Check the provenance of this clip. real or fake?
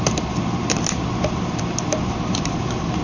fake